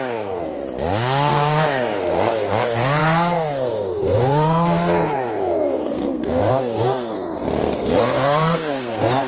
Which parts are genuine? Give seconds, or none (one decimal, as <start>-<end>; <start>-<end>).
0.6-1.3